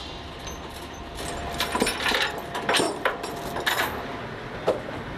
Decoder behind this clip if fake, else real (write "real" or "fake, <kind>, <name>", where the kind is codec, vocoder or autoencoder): real